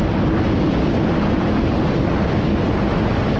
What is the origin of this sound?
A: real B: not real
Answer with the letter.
A